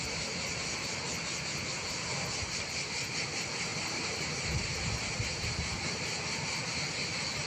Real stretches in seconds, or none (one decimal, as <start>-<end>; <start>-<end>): 0.0-7.5